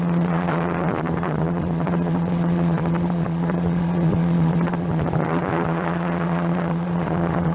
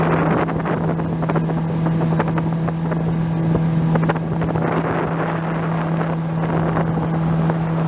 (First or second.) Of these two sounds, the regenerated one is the first